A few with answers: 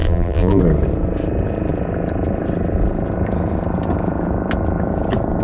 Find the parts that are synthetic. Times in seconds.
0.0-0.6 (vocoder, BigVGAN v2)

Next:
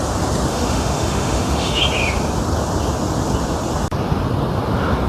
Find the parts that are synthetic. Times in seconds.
0.5-1.8 (autoencoder, DAC-VAE)

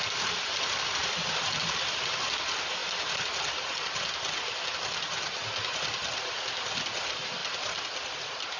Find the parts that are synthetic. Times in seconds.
1.0-2.2 (vocoder, BigVGAN v2); 5.4-6.3; 7.4-8.6

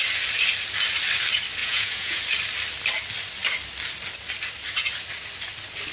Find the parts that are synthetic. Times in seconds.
1.6-2.2 (vocoder, Vocos)

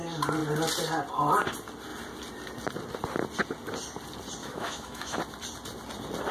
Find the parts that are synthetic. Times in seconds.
4.4-5.2 (autoencoder, DAC-VAE)

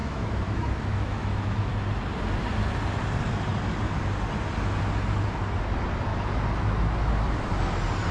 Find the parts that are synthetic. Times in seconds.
0.0-1.7 (autoencoder, DAC-VAE)